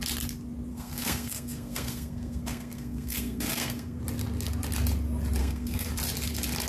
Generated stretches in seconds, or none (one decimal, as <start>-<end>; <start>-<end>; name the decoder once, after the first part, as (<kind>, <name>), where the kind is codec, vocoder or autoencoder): 0.7-4.0 (codec, SNAC); 5.4-5.9